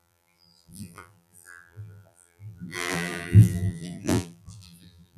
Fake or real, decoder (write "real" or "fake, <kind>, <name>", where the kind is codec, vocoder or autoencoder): fake, vocoder, BigVGAN v2